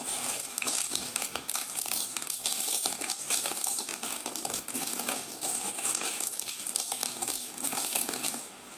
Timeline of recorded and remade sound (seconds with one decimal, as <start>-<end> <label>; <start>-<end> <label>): 0.0-8.8 remade